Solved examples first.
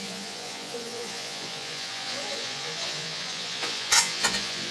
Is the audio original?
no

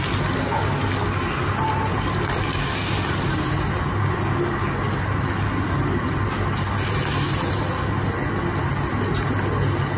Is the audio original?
yes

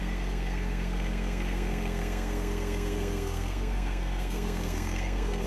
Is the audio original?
no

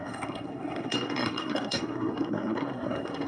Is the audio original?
no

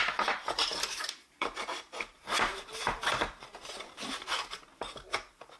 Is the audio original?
no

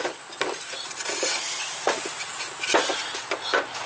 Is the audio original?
yes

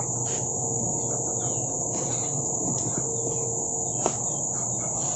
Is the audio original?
yes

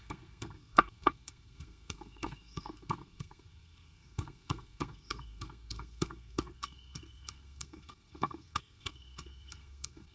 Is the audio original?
no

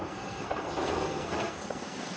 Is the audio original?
no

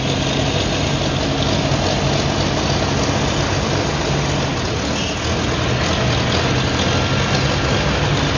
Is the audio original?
yes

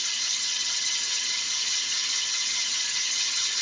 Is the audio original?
no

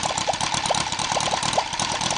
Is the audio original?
no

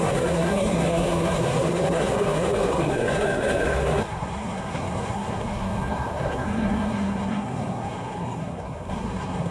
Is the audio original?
no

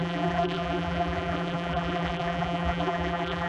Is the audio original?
no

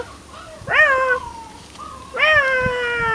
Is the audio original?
yes